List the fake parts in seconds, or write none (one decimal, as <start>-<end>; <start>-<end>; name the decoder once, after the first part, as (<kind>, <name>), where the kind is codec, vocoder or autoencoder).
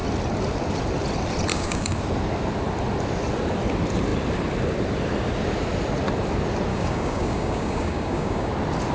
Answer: 1.5-2.0 (codec, DAC); 6.7-8.5